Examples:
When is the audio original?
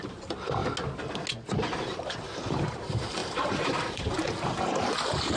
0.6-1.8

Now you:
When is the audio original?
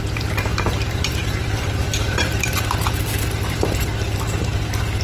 0.0-0.5; 2.6-5.0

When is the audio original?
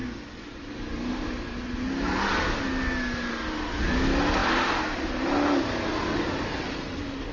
0.0-7.3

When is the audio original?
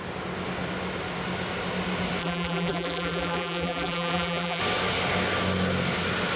0.0-2.2; 4.6-6.4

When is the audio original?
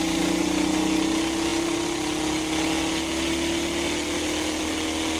0.0-5.2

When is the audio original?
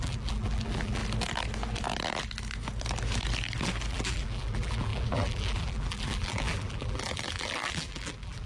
1.0-3.9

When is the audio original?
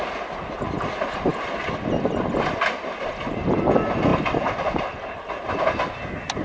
0.0-6.4